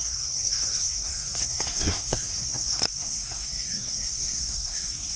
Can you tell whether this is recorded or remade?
remade